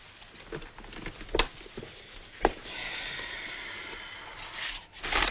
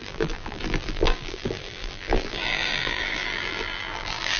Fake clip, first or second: second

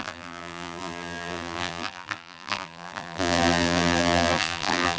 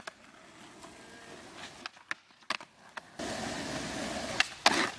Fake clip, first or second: first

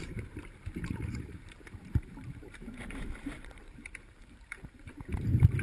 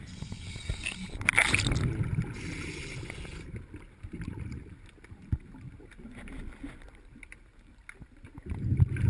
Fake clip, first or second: first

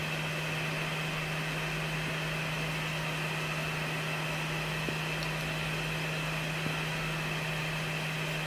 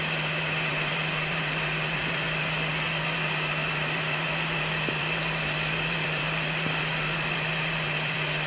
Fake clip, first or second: second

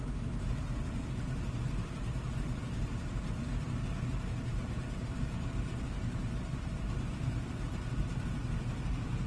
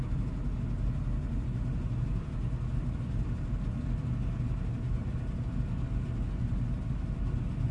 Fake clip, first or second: first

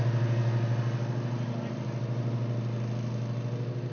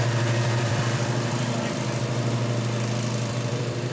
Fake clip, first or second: second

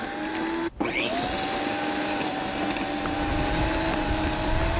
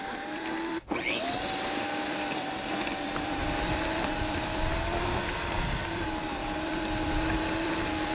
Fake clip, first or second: second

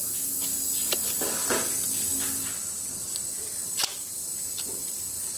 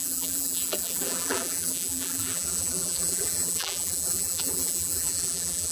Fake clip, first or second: second